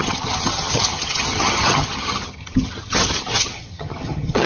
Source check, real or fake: fake